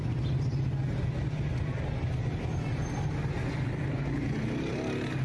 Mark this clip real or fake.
real